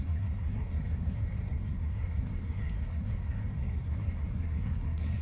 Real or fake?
fake